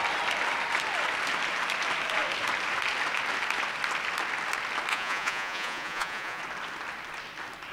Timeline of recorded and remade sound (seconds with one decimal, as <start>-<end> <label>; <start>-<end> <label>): 0.0-4.9 recorded; 4.9-6.4 remade; 6.4-7.7 recorded